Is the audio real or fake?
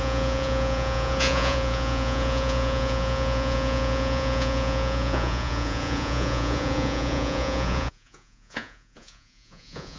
fake